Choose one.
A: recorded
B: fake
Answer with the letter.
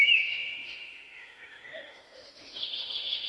B